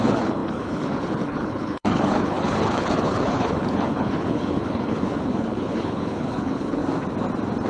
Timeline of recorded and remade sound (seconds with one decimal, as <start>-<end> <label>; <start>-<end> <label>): 0.0-6.8 remade; 6.8-7.7 recorded